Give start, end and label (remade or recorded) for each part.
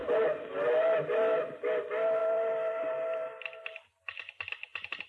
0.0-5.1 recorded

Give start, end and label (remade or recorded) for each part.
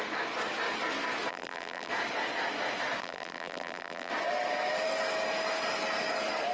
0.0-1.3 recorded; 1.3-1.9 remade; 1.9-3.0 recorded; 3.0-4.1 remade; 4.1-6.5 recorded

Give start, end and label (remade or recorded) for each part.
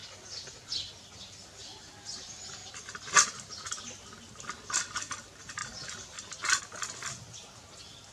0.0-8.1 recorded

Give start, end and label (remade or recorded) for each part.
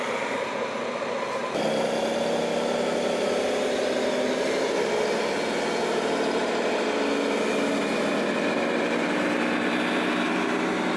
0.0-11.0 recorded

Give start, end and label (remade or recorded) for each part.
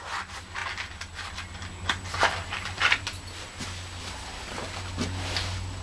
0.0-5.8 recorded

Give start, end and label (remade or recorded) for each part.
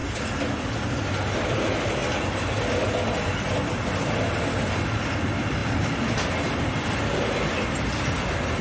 0.0-8.6 recorded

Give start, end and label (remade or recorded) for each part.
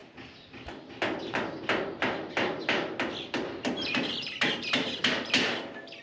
0.0-6.0 recorded